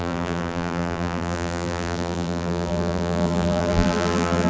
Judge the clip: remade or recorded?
remade